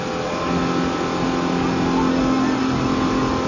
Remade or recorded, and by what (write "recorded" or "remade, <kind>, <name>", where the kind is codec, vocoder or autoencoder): recorded